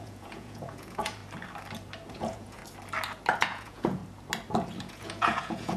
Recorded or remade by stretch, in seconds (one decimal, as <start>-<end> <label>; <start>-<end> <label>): 0.0-1.2 remade; 1.2-2.1 recorded; 2.1-2.6 remade; 2.6-3.4 recorded; 3.4-4.0 remade; 4.0-4.8 recorded; 4.8-5.8 remade